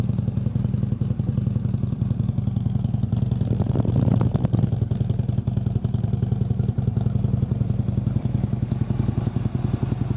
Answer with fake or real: fake